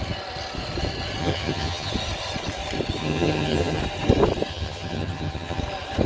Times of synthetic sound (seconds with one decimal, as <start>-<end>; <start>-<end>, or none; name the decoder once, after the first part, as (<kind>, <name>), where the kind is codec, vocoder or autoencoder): 1.2-1.9 (vocoder, HiFi-GAN); 3.0-3.8; 4.5-5.6